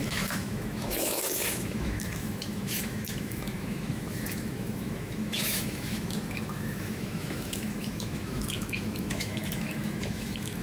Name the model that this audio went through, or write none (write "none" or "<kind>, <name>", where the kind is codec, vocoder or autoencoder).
autoencoder, DAC-VAE